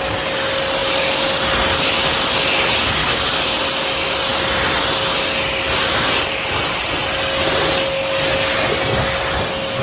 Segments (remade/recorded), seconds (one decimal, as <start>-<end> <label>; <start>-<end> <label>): 0.0-0.8 recorded; 0.8-1.4 remade; 1.4-3.0 recorded; 3.0-3.6 remade; 3.6-9.8 recorded